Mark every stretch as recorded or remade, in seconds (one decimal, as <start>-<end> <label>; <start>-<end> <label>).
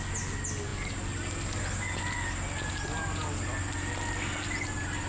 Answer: 0.0-5.1 recorded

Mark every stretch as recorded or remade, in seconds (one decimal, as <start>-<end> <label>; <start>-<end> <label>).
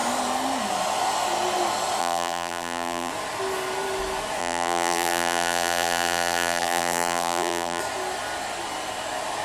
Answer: 0.0-2.0 recorded; 2.0-3.1 remade; 3.1-4.4 recorded; 4.4-7.8 remade; 7.8-9.4 recorded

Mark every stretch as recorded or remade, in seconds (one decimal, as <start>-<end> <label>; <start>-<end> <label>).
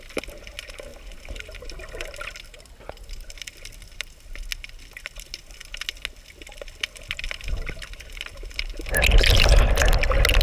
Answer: 0.0-10.4 recorded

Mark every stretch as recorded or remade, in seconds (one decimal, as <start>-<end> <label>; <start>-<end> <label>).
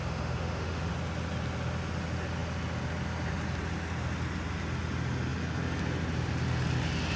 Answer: 0.0-0.9 remade; 0.9-7.2 recorded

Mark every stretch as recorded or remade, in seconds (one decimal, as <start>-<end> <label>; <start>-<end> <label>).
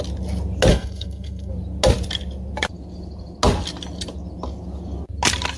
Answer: 0.0-0.7 recorded; 0.7-1.5 remade; 1.5-5.6 recorded